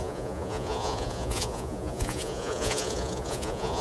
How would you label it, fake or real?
fake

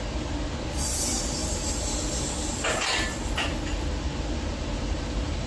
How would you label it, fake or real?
real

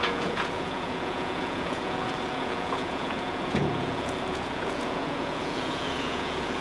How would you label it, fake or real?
fake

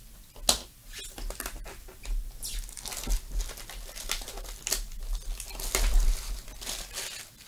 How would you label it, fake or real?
real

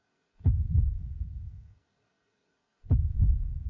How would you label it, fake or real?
fake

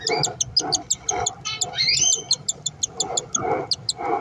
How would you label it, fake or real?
real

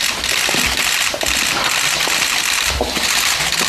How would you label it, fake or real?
real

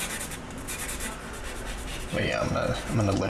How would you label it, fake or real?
fake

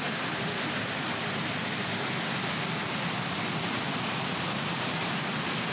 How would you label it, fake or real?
real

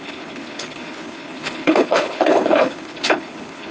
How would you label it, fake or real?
fake